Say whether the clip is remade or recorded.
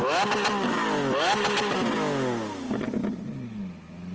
recorded